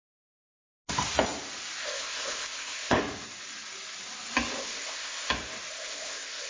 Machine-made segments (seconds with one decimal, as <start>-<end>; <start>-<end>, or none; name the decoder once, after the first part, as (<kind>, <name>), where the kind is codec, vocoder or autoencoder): 1.8-3.0 (codec, ZipCodec); 4.6-5.3; 5.7-6.5